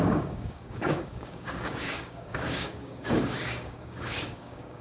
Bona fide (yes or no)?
no